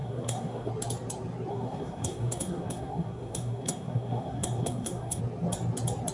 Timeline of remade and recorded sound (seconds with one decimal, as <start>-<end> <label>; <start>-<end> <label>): 0.0-0.7 remade; 0.7-1.5 recorded; 1.5-5.2 remade; 5.2-6.1 recorded